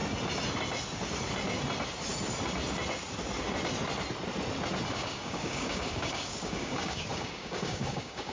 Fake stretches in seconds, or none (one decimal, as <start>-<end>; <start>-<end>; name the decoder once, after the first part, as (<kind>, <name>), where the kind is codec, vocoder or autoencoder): 4.9-8.3 (codec, DAC)